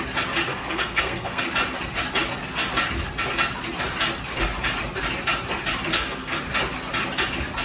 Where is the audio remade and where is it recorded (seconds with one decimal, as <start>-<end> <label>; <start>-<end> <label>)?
0.0-0.5 recorded; 0.5-1.4 remade; 1.4-5.9 recorded; 5.9-6.4 remade; 6.4-7.6 recorded